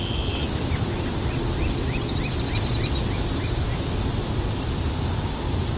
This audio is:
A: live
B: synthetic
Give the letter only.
A